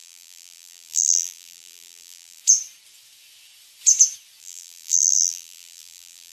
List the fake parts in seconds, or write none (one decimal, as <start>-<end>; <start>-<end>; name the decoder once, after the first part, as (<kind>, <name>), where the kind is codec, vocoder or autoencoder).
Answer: 0.0-2.4 (vocoder, BigVGAN v2); 4.4-6.3